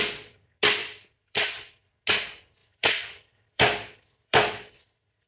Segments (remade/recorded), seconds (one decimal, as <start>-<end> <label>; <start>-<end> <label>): 0.0-0.8 recorded; 0.8-1.9 remade; 1.9-2.6 recorded; 2.6-4.8 remade; 4.8-5.3 recorded